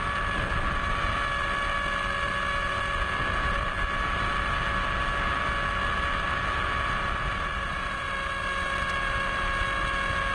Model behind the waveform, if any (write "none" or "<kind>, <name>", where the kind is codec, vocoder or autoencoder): none